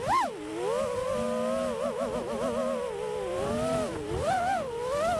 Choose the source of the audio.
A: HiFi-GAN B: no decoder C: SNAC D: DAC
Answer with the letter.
B